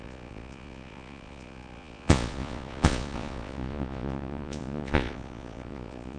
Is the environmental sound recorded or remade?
remade